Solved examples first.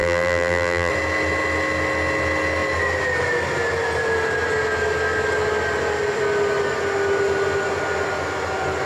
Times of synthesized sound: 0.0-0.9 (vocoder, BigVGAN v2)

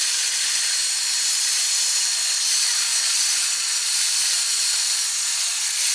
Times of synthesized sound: none

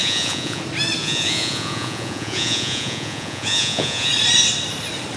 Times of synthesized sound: 0.0-0.6 (vocoder, Vocos); 1.0-4.1

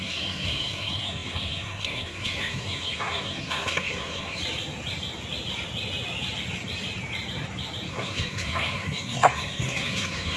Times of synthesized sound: 0.0-4.4 (codec, SNAC); 7.9-10.4

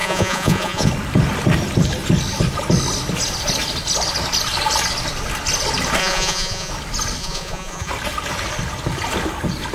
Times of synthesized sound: 0.0-0.9 (vocoder, Vocos); 6.0-6.7; 7.2-7.9

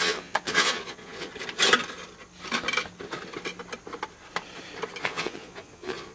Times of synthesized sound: 0.0-1.3 (vocoder, Vocos); 5.0-6.1

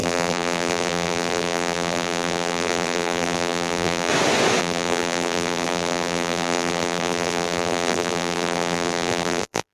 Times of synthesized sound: 0.0-4.1 (vocoder, BigVGAN v2); 4.6-9.7

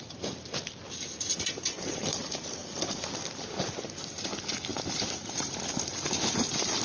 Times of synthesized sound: 2.6-3.3 (vocoder, BigVGAN v2); 4.7-5.7